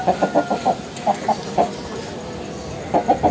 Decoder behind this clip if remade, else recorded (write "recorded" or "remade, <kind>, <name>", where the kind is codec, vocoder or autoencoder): recorded